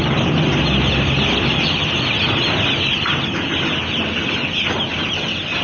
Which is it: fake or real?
real